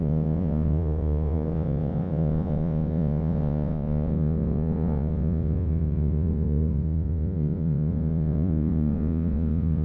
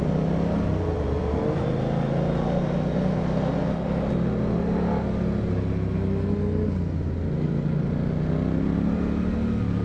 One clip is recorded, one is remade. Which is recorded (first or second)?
second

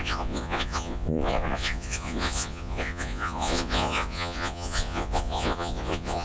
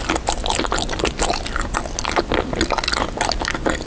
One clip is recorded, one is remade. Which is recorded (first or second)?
second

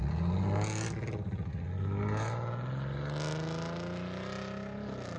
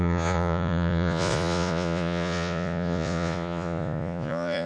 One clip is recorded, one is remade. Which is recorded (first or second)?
first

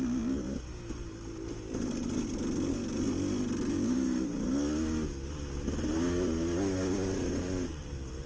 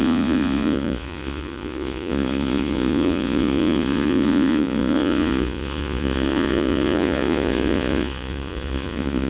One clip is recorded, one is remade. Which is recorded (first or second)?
first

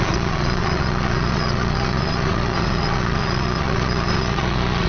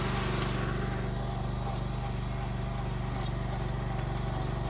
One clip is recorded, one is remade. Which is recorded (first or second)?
second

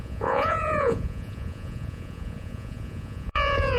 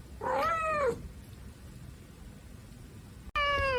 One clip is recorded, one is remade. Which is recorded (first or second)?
second